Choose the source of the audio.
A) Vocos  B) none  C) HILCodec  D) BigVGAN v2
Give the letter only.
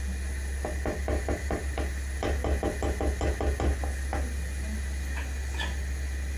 B